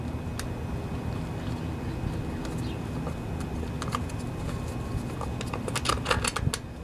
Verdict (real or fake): real